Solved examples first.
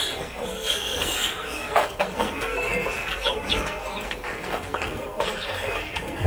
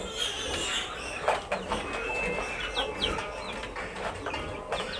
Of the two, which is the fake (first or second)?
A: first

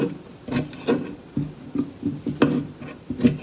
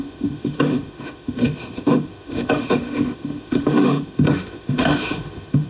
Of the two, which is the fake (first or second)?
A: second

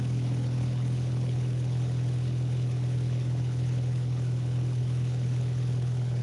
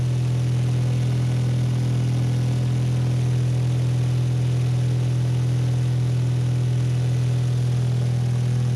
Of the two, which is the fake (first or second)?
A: first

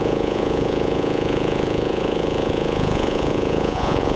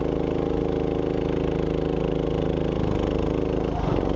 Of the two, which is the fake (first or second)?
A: first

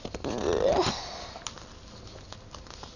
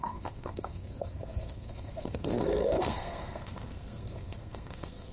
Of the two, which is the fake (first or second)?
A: second